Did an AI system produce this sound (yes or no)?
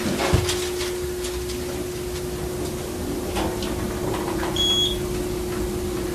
no